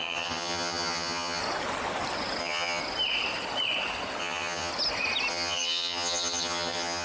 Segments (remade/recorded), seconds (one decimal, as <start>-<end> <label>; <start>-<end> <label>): 0.0-1.4 remade; 1.4-2.4 recorded; 2.4-2.8 remade; 2.8-4.2 recorded; 4.2-4.7 remade; 4.7-5.3 recorded; 5.3-7.0 remade